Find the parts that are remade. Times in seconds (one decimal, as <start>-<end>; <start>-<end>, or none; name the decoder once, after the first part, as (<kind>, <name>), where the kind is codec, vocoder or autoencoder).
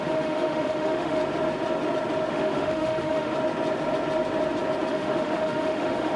0.0-1.2 (autoencoder, DAC-VAE); 2.3-3.3; 4.9-6.2